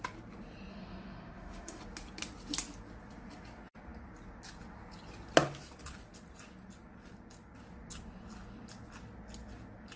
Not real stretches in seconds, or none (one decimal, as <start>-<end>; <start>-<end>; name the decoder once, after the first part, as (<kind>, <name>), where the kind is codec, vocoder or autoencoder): 0.7-1.8 (autoencoder, DAC-VAE)